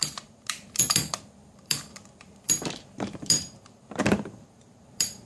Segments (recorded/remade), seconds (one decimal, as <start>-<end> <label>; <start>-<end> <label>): 0.0-5.3 remade

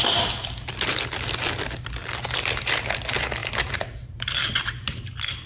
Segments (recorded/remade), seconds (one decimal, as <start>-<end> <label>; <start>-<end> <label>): 0.0-3.4 recorded; 3.4-4.7 remade; 4.7-5.5 recorded

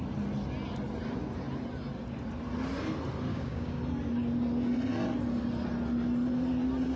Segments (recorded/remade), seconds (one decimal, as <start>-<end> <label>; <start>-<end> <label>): 0.0-3.3 recorded; 3.3-3.8 remade; 3.8-7.0 recorded

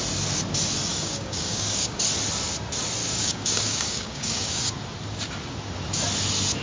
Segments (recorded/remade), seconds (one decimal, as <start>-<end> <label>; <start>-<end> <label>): 0.0-0.9 recorded; 0.9-2.0 remade; 2.0-3.0 recorded; 3.0-4.6 remade; 4.6-6.6 recorded